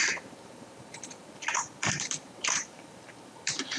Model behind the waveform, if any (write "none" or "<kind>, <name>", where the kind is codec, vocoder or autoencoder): vocoder, BigVGAN v2